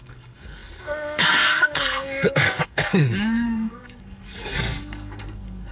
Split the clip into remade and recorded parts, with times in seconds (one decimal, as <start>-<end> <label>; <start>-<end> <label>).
0.0-5.7 remade